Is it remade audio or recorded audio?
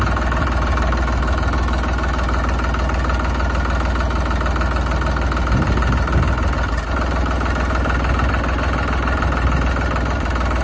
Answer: recorded